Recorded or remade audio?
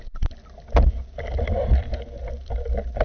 recorded